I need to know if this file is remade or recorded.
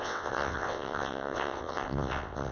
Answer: remade